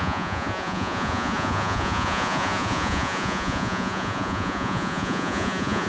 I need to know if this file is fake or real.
fake